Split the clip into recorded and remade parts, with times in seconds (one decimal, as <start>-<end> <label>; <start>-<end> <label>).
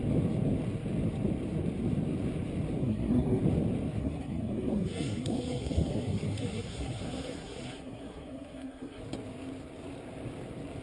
0.0-2.8 recorded; 2.8-3.4 remade; 3.4-4.0 recorded; 4.0-9.0 remade; 9.0-10.8 recorded